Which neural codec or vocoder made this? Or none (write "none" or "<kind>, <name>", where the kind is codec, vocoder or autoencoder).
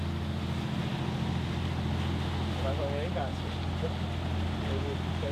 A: none